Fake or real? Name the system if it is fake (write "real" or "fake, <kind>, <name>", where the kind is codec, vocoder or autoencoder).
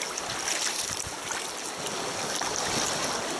real